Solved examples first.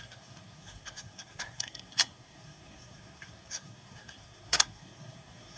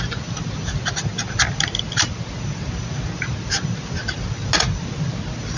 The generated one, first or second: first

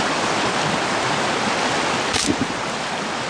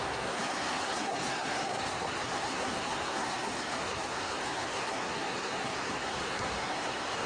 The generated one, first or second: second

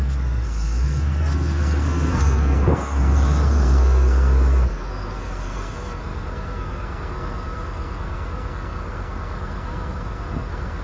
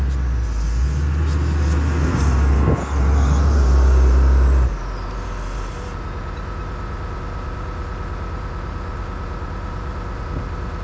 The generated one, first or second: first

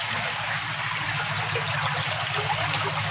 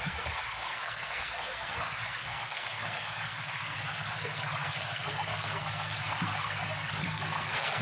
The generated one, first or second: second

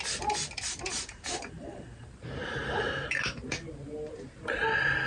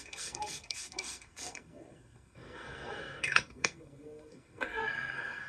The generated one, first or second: second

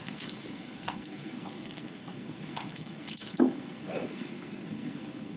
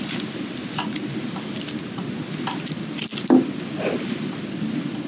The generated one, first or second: first